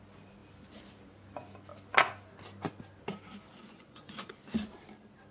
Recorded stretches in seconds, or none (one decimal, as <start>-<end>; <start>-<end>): 0.0-3.5; 4.3-5.3